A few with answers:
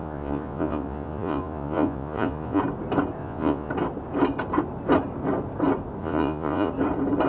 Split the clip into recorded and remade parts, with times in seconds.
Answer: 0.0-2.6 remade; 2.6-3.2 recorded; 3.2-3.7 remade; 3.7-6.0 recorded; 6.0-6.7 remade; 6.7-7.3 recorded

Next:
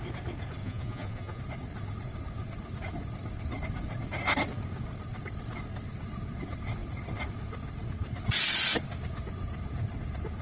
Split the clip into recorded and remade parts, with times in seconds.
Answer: 0.0-0.6 recorded; 0.6-1.4 remade; 1.4-10.4 recorded

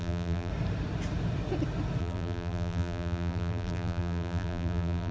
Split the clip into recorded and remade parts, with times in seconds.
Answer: 0.0-0.5 remade; 0.5-2.0 recorded; 2.0-5.1 remade

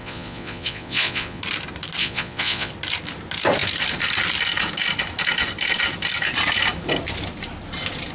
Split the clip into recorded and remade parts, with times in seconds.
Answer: 0.0-1.4 remade; 1.4-2.0 recorded; 2.0-2.7 remade; 2.7-8.1 recorded

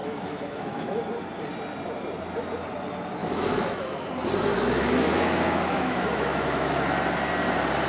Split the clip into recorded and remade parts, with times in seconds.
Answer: 0.0-1.0 remade; 1.0-3.2 recorded; 3.2-4.1 remade; 4.1-4.5 recorded; 4.5-6.7 remade; 6.7-7.9 recorded